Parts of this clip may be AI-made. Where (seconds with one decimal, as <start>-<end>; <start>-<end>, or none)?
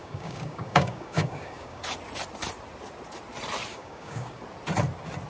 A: 0.0-1.8; 3.7-4.4